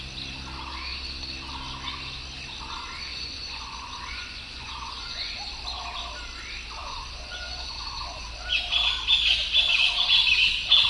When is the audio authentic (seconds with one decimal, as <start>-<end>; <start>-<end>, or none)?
0.0-3.1; 5.4-6.8; 8.3-10.9